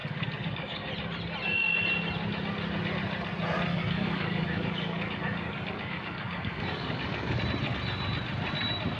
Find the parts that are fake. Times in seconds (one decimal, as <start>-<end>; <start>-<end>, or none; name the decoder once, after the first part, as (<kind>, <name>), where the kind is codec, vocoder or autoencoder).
0.0-0.9 (codec, DAC); 3.7-7.4